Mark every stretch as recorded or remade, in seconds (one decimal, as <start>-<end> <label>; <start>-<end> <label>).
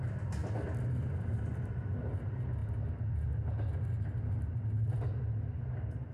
0.0-6.1 recorded